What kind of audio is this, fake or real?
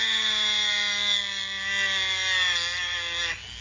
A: real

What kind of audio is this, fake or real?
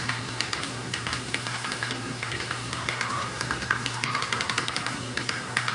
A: fake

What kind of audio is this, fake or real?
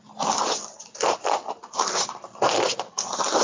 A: real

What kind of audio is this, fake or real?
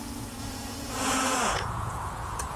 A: fake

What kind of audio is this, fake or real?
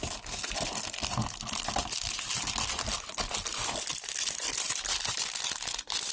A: real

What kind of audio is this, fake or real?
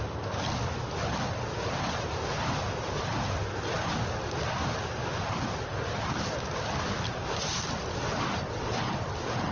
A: real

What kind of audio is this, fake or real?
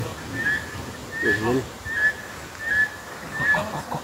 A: real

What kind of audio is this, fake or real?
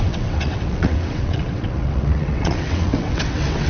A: fake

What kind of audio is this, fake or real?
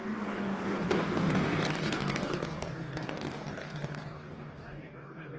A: fake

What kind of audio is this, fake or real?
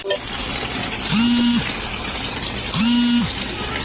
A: real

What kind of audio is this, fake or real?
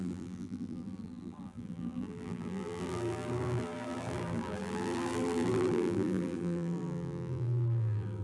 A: fake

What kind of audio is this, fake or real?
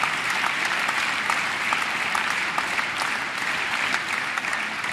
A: real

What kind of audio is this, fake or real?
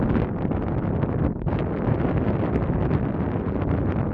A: real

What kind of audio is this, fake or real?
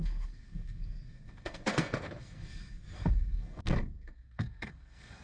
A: fake